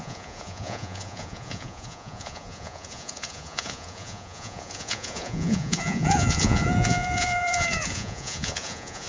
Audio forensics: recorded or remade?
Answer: remade